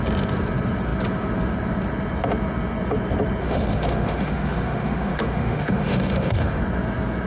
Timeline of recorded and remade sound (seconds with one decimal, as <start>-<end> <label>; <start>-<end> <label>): 0.0-3.4 recorded; 3.4-6.6 remade; 6.6-7.3 recorded